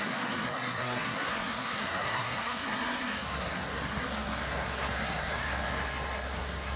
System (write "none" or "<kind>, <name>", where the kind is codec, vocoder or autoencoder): codec, SNAC